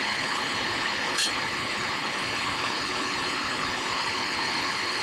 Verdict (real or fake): fake